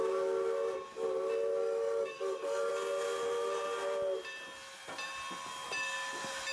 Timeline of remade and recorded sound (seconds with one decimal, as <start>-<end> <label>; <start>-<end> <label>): 0.0-1.6 recorded; 1.6-2.7 remade; 2.7-6.5 recorded